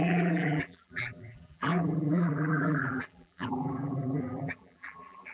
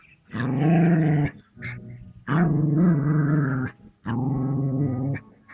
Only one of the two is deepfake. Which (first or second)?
first